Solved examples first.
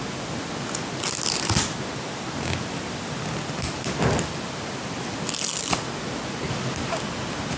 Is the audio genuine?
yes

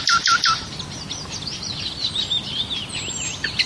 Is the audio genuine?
yes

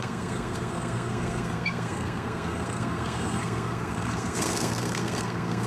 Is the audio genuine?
no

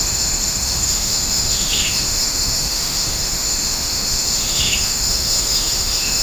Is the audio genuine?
no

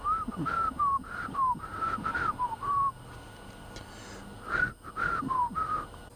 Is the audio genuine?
yes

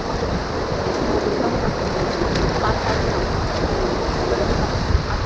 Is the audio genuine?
yes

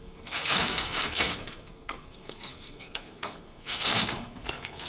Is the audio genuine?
no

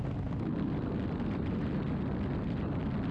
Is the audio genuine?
yes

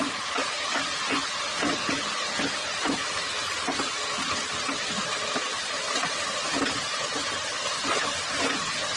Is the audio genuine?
yes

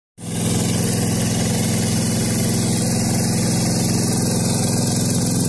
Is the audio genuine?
yes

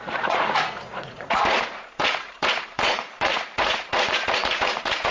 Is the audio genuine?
no